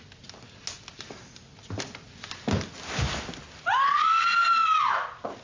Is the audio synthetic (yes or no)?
no